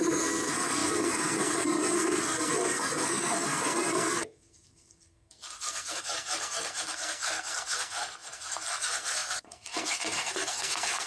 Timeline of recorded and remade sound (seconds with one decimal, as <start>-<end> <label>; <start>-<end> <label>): 0.0-11.1 remade